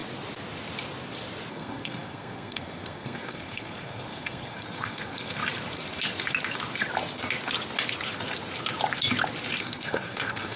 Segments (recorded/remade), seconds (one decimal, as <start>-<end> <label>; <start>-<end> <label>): 0.0-1.5 recorded; 1.5-5.4 remade; 5.4-9.6 recorded; 9.6-10.6 remade